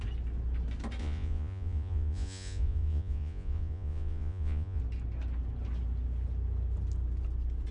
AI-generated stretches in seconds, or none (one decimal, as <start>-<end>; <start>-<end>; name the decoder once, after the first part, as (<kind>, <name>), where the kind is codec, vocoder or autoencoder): 1.0-4.8 (vocoder, Vocos)